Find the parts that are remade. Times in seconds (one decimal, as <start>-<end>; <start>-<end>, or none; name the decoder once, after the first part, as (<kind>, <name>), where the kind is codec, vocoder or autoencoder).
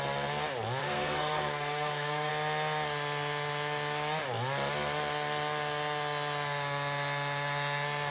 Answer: 0.8-2.3 (codec, SNAC)